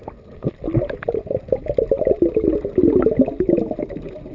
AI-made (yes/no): no